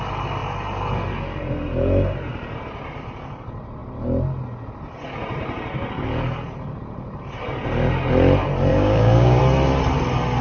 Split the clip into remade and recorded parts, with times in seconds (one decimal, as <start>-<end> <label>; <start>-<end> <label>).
0.0-8.7 recorded; 8.7-9.4 remade; 9.4-10.4 recorded